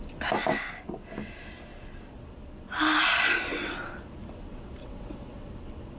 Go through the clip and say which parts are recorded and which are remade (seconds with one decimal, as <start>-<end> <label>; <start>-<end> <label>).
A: 0.0-3.5 recorded; 3.5-4.0 remade; 4.0-4.8 recorded; 4.8-5.5 remade; 5.5-6.0 recorded